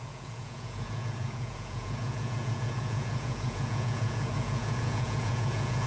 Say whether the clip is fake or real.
fake